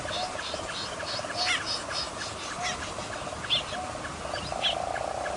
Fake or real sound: real